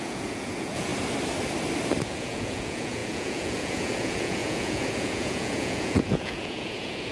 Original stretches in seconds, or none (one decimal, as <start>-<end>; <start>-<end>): 0.9-2.0